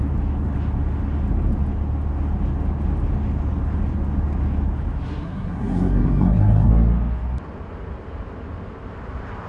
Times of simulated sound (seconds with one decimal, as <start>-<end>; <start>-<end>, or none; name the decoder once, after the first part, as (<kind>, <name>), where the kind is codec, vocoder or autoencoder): 5.1-6.7 (codec, SNAC)